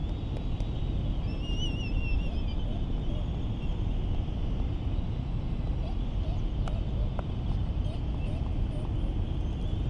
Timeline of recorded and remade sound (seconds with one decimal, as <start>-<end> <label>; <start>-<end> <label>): 0.0-9.9 recorded